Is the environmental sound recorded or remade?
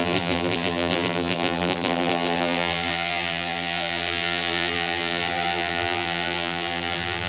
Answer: remade